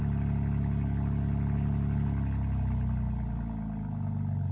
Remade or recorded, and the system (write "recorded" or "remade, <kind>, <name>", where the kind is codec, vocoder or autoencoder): recorded